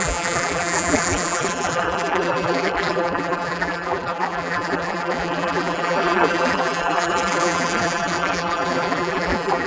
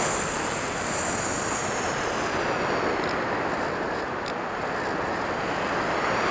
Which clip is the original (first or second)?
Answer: second